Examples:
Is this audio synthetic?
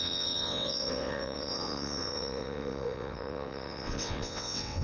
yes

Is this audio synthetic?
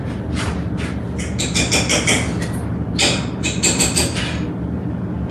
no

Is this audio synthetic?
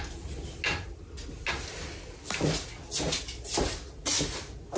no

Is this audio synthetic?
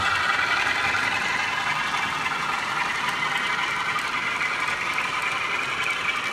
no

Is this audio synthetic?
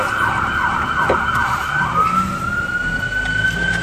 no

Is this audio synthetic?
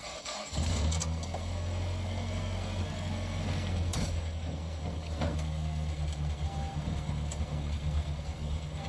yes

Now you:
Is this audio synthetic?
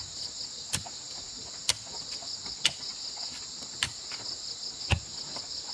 no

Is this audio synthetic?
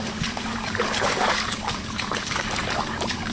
yes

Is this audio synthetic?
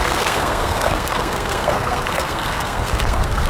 yes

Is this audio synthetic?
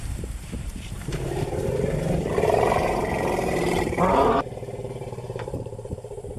yes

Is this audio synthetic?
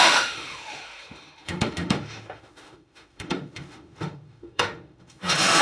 yes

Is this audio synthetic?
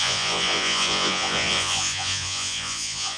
yes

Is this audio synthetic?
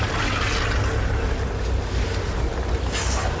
no